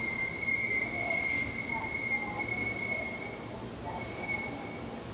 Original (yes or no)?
yes